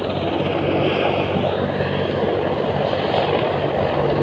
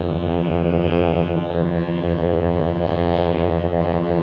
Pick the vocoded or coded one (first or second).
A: second